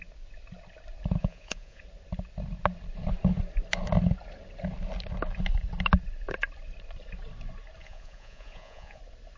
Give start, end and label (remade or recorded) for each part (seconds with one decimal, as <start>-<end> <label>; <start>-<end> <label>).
0.0-1.2 recorded; 1.2-1.8 remade; 1.8-7.8 recorded; 7.8-9.0 remade; 9.0-9.4 recorded